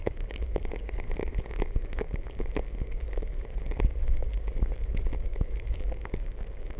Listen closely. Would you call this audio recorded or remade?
remade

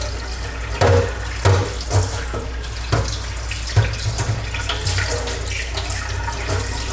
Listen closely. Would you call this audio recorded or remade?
recorded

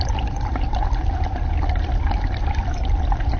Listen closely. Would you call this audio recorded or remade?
recorded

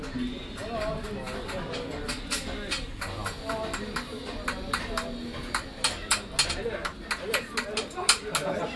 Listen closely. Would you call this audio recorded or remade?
recorded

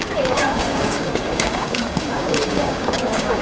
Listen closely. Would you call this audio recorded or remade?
remade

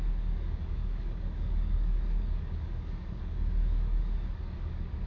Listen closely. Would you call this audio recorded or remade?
remade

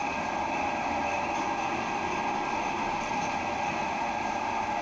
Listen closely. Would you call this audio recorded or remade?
recorded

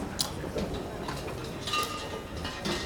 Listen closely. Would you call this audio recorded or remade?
recorded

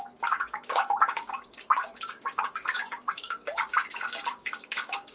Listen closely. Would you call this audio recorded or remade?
remade